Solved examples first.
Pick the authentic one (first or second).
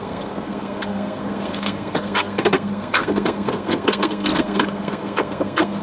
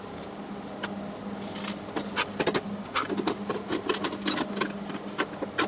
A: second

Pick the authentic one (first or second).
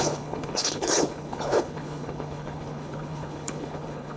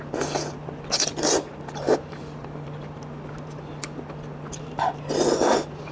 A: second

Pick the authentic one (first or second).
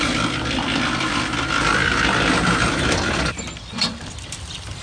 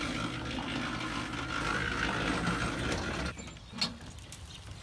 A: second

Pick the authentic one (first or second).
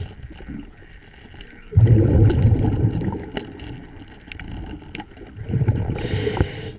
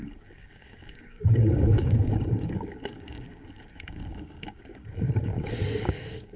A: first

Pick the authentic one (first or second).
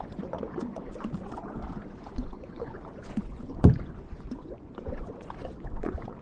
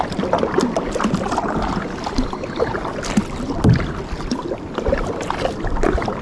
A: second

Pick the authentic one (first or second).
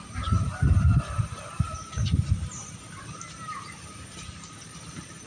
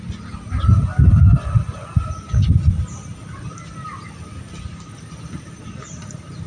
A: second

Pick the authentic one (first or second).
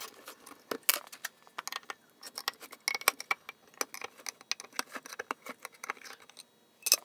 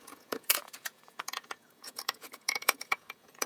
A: first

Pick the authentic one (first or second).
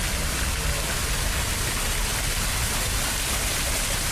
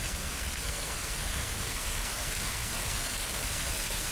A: first